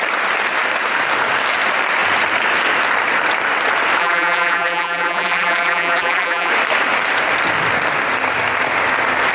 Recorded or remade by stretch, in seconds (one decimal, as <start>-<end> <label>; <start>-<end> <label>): 0.0-4.0 recorded; 4.0-6.5 remade; 6.5-9.3 recorded